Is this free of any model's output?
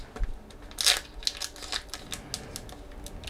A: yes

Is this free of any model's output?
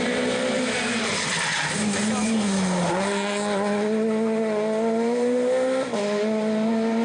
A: yes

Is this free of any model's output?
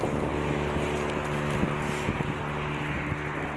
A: yes